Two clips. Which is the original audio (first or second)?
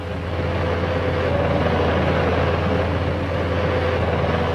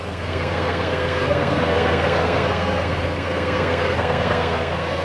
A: first